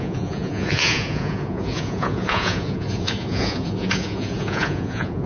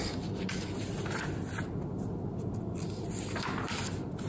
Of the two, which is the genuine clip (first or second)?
second